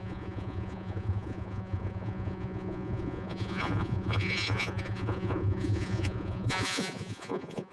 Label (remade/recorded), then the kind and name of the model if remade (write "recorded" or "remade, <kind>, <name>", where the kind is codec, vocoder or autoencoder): remade, vocoder, Vocos